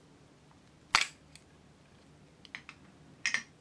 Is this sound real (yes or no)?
yes